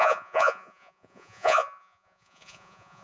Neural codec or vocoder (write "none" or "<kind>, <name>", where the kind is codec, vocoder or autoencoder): vocoder, Vocos